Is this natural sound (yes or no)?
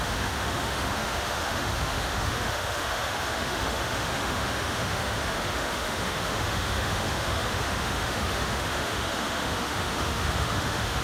no